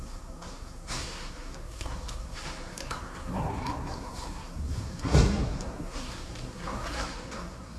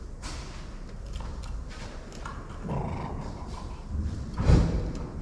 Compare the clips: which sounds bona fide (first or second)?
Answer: second